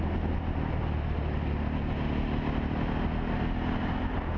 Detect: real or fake real